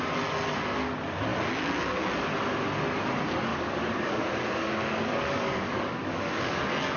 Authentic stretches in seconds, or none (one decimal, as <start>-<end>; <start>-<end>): 0.0-3.5; 6.6-7.0